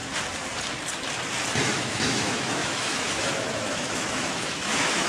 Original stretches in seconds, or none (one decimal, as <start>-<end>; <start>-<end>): 0.0-1.6